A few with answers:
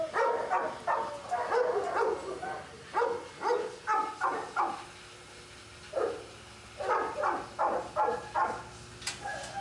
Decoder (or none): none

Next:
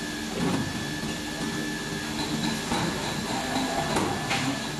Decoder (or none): none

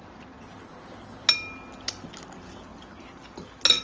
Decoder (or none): none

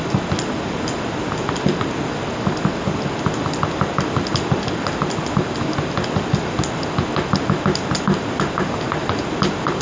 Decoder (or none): none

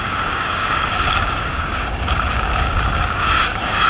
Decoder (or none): codec, DAC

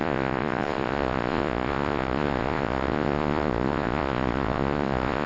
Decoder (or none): vocoder, Vocos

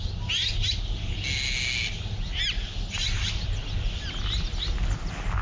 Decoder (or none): none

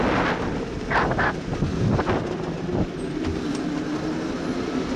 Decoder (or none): none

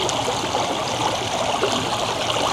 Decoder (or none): none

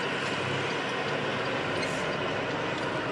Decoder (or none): none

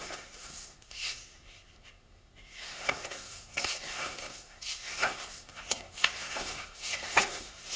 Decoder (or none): codec, SNAC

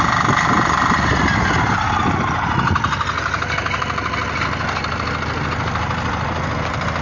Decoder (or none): none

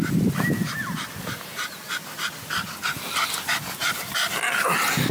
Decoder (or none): none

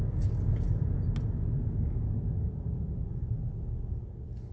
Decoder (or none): none